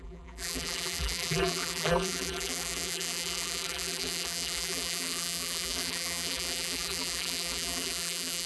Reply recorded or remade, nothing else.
remade